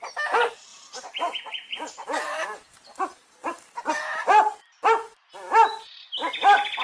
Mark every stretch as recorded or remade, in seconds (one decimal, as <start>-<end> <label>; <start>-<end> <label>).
0.0-0.7 recorded; 0.7-4.8 remade; 4.8-6.8 recorded